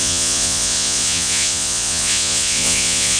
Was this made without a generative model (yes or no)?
no